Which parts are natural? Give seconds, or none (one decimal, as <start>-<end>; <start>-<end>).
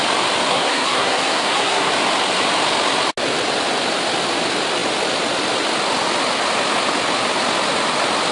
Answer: 0.0-0.5; 1.9-8.3